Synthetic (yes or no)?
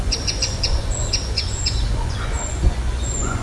yes